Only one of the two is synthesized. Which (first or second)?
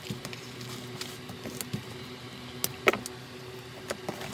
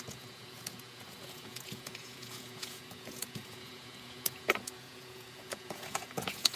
second